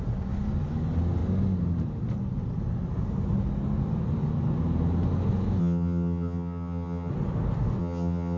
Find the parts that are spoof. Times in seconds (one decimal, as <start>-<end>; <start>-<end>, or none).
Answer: 5.6-7.1; 7.8-8.4